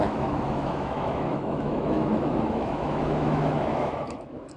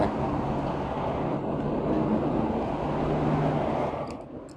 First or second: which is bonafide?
second